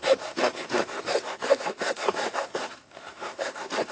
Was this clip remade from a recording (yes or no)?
yes